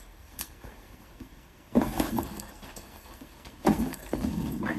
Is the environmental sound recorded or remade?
remade